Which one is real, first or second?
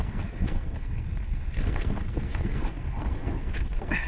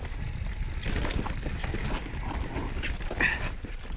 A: second